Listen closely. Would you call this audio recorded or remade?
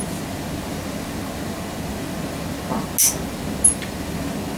recorded